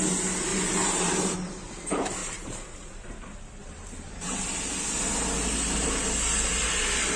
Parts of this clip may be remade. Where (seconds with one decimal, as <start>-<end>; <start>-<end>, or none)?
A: 0.5-1.1; 2.2-3.2; 3.6-4.4